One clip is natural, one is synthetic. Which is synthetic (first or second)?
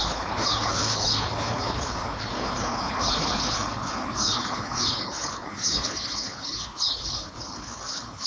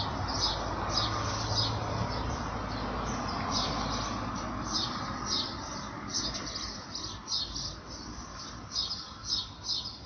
first